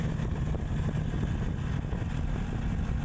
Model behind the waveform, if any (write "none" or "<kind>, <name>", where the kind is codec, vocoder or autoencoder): none